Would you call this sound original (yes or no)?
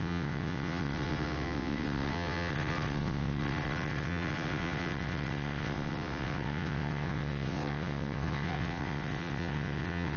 no